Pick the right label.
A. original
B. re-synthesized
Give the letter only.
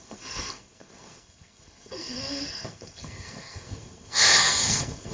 B